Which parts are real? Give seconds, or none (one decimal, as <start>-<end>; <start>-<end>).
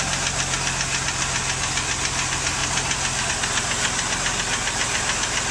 0.0-5.5